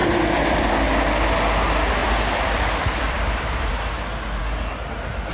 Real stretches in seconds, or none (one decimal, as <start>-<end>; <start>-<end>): 0.7-2.0; 3.7-5.3